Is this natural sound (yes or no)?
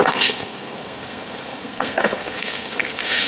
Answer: no